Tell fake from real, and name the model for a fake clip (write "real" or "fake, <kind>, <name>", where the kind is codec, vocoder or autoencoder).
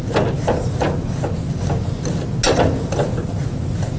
real